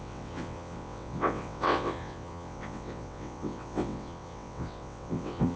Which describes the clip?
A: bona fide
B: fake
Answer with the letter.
B